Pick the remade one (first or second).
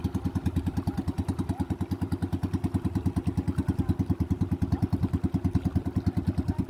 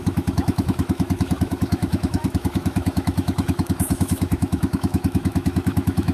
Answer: second